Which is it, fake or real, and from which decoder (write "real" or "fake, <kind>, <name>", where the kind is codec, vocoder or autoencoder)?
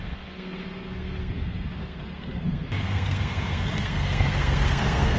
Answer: fake, codec, SNAC